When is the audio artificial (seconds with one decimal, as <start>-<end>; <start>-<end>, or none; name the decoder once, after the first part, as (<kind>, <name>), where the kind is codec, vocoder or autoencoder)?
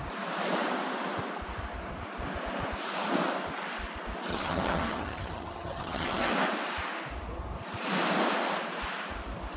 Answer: 4.3-6.3 (vocoder, HiFi-GAN)